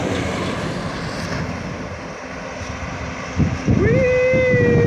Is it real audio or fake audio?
real